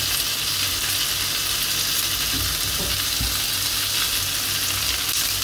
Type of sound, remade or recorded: recorded